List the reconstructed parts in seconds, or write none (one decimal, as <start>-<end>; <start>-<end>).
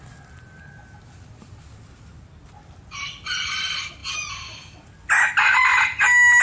none